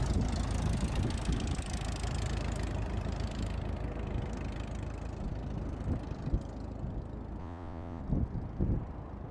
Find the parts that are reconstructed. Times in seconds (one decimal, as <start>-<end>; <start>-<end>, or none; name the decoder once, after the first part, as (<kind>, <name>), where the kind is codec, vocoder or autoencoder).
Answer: 7.4-8.0 (vocoder, Vocos)